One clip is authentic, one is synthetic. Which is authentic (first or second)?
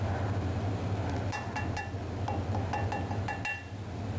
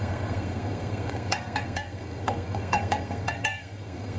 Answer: first